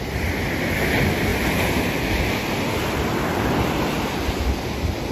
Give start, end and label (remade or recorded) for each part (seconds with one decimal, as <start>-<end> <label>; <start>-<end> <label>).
0.0-5.1 recorded